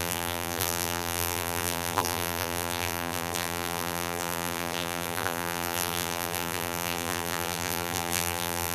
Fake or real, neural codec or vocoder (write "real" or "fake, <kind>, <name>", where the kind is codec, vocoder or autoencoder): fake, vocoder, BigVGAN v2